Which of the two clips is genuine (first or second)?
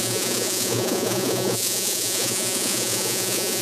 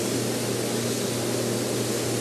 second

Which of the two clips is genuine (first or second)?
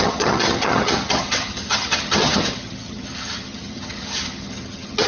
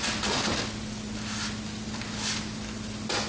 second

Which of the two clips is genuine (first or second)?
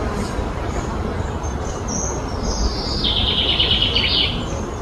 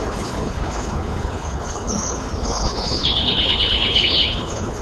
first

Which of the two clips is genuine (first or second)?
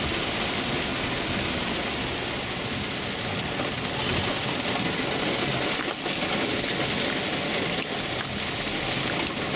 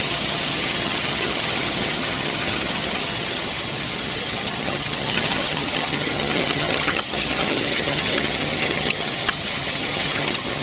first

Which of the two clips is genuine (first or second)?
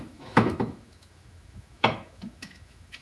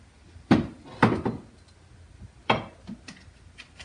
second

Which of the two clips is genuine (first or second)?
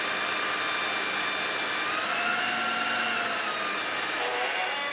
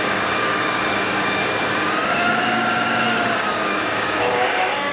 first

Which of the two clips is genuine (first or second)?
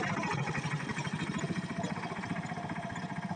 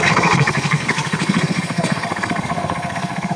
first